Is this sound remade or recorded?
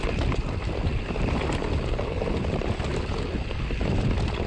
recorded